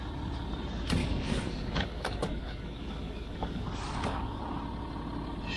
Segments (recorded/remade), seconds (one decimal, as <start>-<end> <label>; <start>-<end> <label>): 0.0-1.0 recorded; 1.0-4.4 remade; 4.4-5.6 recorded